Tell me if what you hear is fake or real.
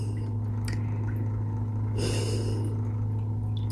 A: real